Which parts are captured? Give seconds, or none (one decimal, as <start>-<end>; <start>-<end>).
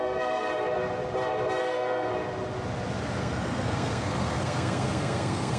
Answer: 0.5-1.6; 2.1-3.2